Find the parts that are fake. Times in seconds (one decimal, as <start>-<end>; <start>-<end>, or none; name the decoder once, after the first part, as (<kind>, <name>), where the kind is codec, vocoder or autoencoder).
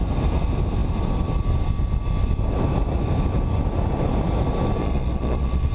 4.8-5.7 (vocoder, Vocos)